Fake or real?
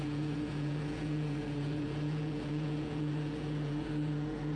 fake